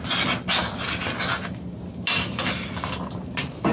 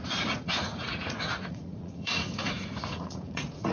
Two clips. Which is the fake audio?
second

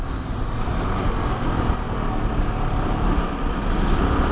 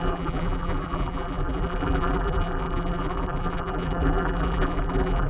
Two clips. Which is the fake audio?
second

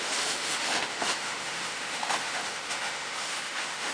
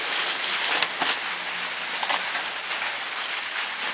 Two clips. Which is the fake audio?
first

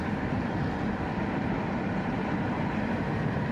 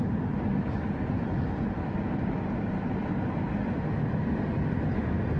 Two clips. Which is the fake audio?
first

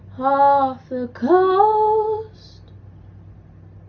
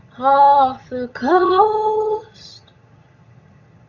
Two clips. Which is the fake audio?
second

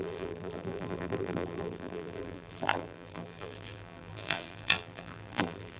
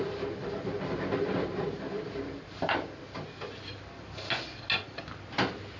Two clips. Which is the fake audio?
first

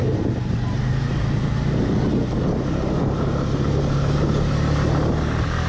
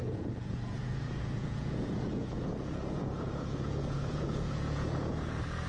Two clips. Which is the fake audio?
second